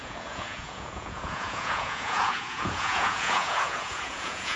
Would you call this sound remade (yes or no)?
yes